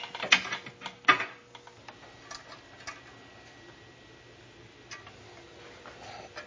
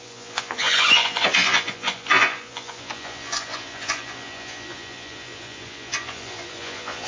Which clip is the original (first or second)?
first